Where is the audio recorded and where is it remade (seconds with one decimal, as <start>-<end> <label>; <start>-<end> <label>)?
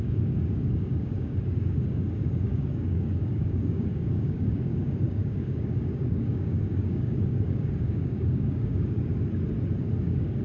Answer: 0.0-9.1 remade; 9.1-10.0 recorded; 10.0-10.4 remade